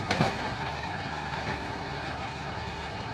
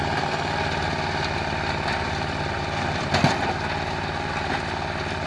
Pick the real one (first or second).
second